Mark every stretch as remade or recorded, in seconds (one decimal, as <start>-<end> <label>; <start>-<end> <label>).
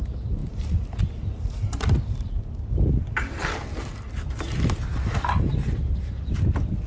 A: 0.0-0.4 recorded; 0.4-2.4 remade; 2.4-6.9 recorded